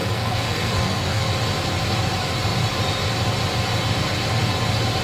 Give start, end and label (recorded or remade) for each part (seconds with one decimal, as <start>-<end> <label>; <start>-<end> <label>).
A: 0.0-1.3 remade; 1.3-5.0 recorded